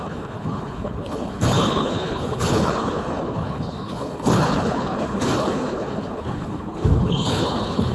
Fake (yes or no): yes